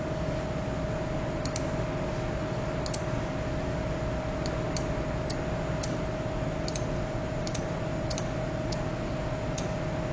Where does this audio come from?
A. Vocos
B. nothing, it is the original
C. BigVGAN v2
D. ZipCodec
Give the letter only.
B